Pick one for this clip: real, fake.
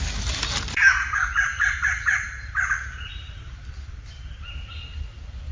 real